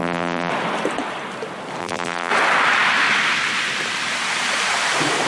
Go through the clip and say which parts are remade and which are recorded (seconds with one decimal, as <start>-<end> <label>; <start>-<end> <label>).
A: 0.0-0.5 remade; 0.5-1.8 recorded; 1.8-2.3 remade; 2.3-5.3 recorded